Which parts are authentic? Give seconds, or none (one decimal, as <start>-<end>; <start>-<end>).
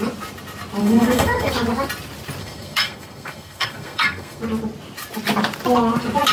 0.0-0.8; 1.5-2.4; 4.4-6.3